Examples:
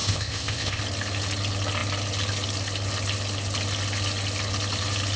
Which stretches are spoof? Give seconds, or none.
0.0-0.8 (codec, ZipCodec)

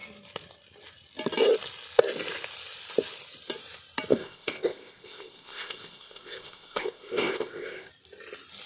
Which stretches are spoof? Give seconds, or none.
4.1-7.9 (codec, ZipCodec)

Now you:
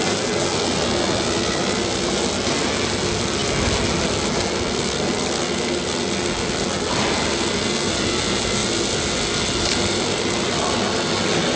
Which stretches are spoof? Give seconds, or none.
none